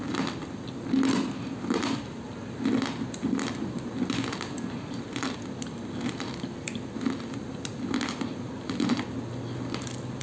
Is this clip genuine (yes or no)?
no